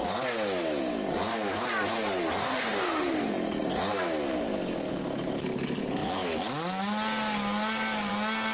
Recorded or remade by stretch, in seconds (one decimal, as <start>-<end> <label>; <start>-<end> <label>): 0.0-2.4 recorded; 2.4-3.3 remade; 3.3-8.5 recorded